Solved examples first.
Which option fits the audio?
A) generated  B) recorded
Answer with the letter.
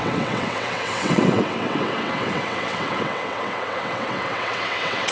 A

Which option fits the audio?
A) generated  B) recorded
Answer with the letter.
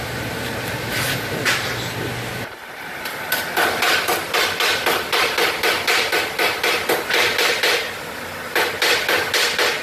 B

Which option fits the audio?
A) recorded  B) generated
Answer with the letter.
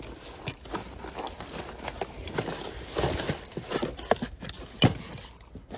A